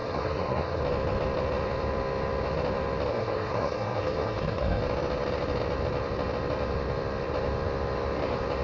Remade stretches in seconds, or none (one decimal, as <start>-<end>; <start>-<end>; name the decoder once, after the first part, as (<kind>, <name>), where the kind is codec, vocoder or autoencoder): 0.0-0.8 (codec, SNAC); 3.1-4.8